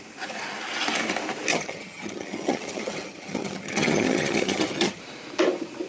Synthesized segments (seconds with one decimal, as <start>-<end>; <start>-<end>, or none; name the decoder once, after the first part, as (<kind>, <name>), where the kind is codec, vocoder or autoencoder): 1.5-5.0 (vocoder, HiFi-GAN)